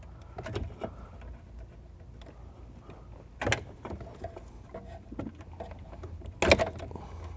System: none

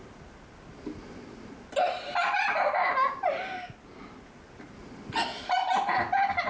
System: none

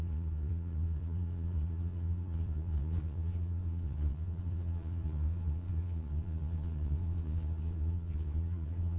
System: vocoder, Vocos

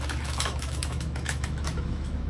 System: autoencoder, DAC-VAE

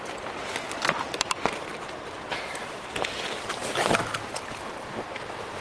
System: vocoder, BigVGAN v2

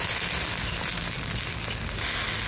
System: none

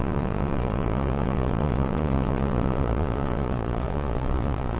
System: vocoder, Vocos